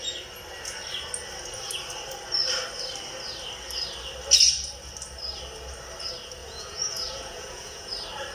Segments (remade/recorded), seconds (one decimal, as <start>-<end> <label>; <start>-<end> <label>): 0.0-6.4 recorded; 6.4-7.9 remade; 7.9-8.3 recorded